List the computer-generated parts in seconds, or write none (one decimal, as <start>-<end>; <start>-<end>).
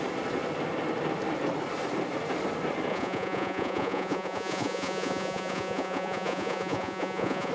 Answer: 2.9-7.5